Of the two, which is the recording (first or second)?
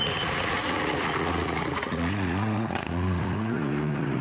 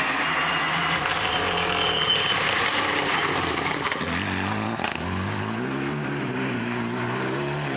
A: second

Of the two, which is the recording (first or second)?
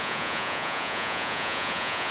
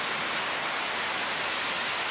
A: second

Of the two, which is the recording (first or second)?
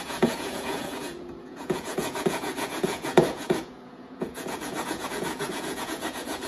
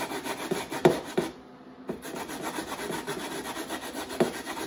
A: second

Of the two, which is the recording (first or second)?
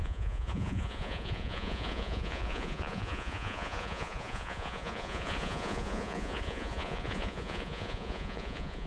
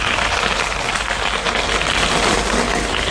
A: second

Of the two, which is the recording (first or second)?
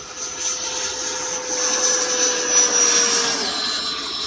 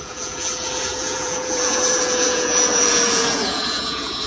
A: first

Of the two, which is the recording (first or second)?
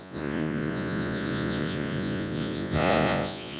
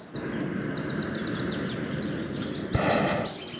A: second